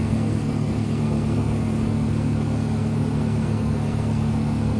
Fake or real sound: fake